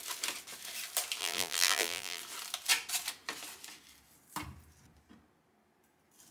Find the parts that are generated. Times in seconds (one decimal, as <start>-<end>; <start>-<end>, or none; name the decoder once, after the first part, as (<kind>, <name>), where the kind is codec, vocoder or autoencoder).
1.2-2.2 (vocoder, BigVGAN v2)